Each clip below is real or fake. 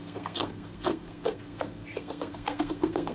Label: fake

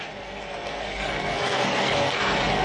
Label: fake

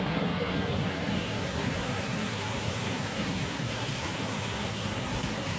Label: fake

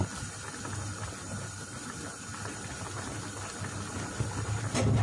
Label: real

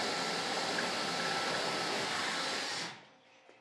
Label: real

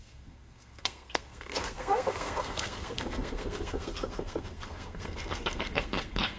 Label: fake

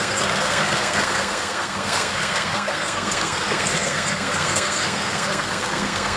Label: fake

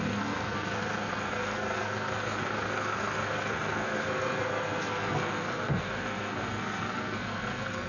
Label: fake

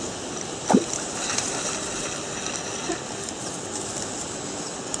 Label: real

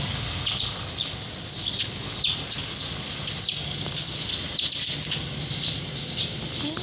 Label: real